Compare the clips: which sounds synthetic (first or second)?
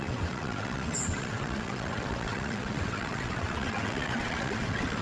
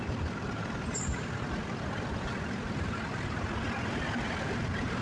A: first